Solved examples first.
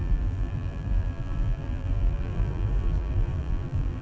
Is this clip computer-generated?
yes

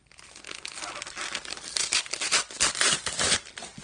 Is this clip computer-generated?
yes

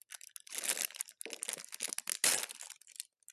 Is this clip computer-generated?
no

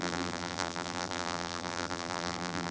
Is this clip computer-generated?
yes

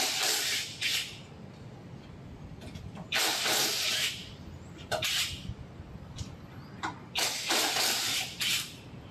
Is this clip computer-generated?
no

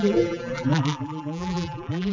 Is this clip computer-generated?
yes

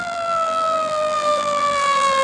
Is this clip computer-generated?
yes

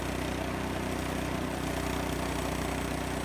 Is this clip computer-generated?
no